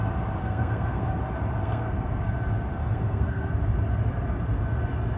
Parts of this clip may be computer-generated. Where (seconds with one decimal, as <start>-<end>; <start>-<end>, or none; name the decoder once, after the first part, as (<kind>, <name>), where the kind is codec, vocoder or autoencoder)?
0.4-1.2 (codec, SNAC); 1.6-2.3; 2.8-3.5